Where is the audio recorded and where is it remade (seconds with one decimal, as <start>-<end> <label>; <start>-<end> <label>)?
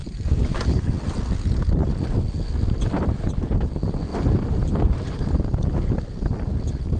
0.0-0.9 remade; 0.9-4.1 recorded; 4.1-5.3 remade; 5.3-7.0 recorded